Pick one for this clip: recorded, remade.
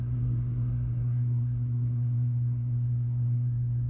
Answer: remade